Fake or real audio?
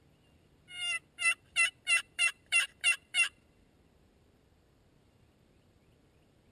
fake